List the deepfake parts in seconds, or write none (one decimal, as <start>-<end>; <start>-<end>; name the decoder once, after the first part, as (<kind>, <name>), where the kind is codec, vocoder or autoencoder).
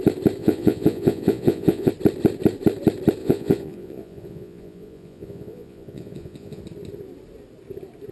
0.4-1.9 (vocoder, Vocos); 3.2-6.6